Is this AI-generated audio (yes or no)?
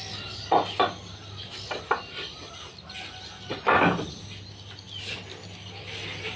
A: no